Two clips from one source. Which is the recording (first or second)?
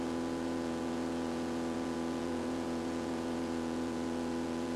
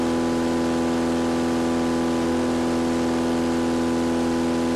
second